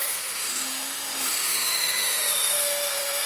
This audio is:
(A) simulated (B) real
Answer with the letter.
A